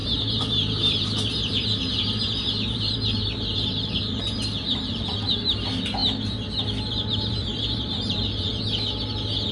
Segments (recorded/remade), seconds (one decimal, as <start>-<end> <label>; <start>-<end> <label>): 0.0-4.2 remade; 4.2-6.0 recorded; 6.0-8.6 remade; 8.6-9.5 recorded